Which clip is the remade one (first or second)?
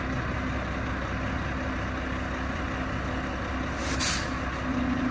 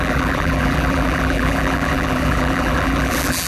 second